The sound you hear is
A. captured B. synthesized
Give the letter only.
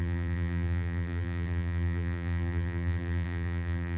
B